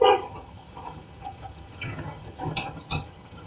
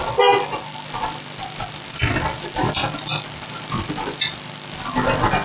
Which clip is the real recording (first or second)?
second